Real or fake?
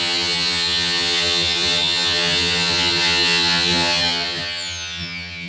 fake